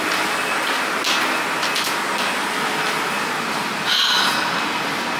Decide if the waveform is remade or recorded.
recorded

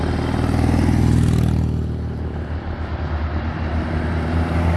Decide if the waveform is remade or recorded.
recorded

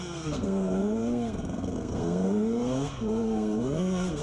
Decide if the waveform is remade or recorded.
remade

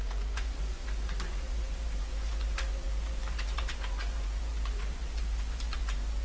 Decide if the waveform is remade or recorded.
remade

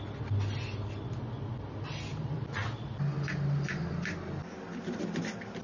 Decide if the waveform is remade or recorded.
recorded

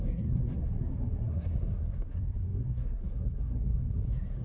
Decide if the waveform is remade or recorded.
remade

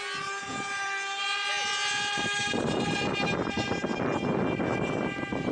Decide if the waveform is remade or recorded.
recorded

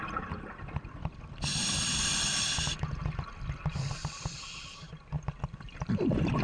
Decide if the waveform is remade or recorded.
remade